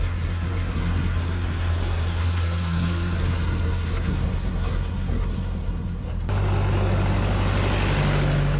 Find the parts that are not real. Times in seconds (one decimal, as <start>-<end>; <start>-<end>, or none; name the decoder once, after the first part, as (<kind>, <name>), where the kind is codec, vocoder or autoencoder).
0.0-6.1 (codec, SNAC)